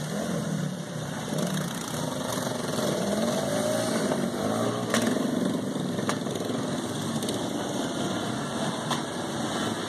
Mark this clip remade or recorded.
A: remade